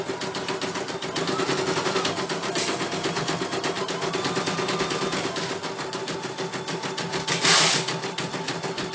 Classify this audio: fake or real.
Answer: real